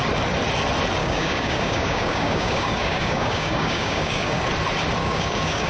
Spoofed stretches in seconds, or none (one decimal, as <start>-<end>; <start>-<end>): 1.0-4.4; 5.0-5.7